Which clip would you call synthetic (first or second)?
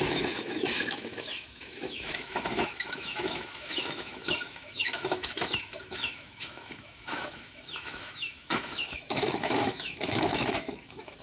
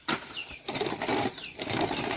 first